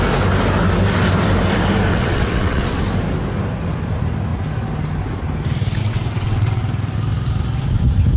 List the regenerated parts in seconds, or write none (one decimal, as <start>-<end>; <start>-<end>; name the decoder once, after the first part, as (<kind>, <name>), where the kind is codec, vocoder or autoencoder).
1.9-2.8 (vocoder, WaveNeXt); 5.8-6.6